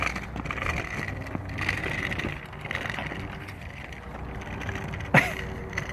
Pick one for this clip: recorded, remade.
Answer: remade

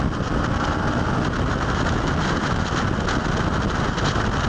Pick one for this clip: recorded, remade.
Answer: recorded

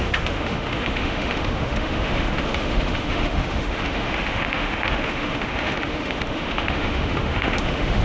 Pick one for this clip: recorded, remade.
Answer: remade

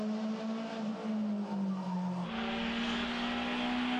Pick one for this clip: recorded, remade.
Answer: recorded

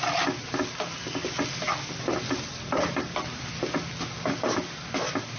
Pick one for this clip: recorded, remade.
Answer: recorded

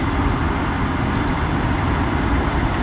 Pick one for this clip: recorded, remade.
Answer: recorded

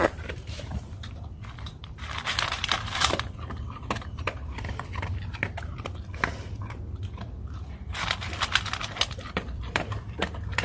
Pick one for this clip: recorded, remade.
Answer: remade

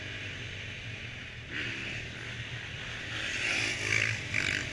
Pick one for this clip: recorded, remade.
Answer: recorded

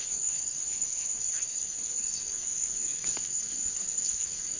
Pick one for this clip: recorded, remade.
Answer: remade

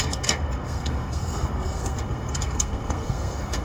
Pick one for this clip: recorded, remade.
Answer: remade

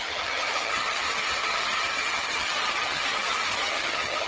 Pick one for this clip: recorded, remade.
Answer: remade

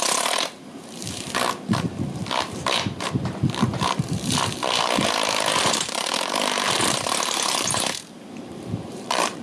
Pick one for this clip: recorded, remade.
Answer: remade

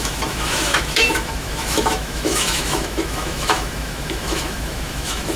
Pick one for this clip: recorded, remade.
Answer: remade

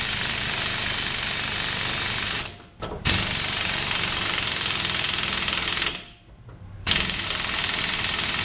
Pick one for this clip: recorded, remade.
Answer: remade